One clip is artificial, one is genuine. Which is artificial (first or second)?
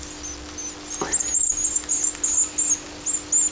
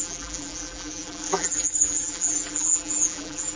second